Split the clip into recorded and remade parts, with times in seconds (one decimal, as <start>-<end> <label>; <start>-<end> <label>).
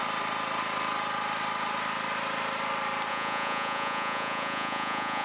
0.0-3.1 recorded; 3.1-5.2 remade